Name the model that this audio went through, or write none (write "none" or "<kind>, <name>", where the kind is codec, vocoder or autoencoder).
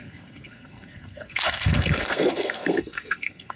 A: codec, SNAC